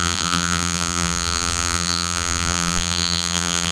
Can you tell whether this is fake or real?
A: fake